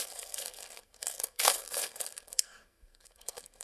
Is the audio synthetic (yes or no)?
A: yes